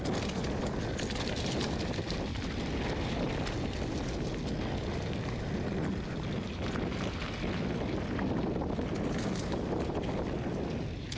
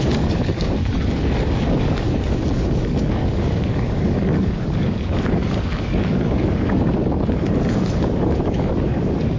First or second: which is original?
first